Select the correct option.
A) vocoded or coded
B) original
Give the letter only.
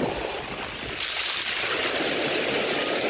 B